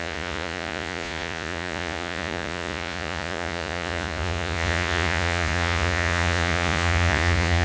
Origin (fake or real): fake